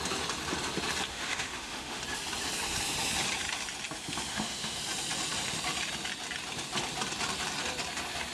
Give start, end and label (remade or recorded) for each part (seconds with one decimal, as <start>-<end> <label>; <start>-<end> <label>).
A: 0.0-1.1 recorded; 1.1-2.0 remade; 2.0-4.3 recorded; 4.3-4.8 remade; 4.8-8.3 recorded

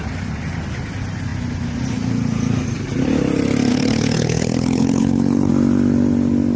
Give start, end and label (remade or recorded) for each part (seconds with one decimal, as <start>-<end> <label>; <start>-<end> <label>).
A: 0.0-3.7 recorded; 3.7-5.5 remade; 5.5-6.6 recorded

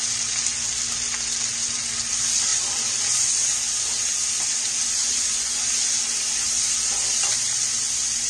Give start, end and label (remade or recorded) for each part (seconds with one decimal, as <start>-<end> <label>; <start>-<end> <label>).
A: 0.0-5.0 recorded; 5.0-5.7 remade; 5.7-8.3 recorded

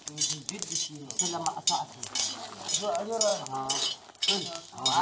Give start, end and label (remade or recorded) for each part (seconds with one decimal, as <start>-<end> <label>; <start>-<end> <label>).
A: 0.0-5.0 recorded

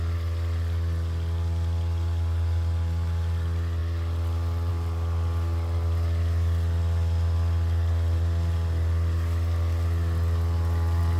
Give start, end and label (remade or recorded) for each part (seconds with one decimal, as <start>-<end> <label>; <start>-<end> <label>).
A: 0.0-11.2 recorded

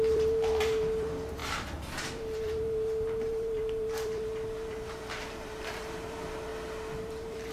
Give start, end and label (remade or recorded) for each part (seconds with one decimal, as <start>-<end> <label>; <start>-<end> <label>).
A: 0.0-6.5 remade; 6.5-7.0 recorded; 7.0-7.5 remade